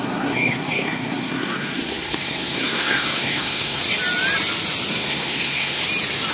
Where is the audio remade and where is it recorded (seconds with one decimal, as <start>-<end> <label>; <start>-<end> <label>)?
0.0-3.8 remade; 3.8-4.9 recorded; 4.9-5.8 remade; 5.8-6.3 recorded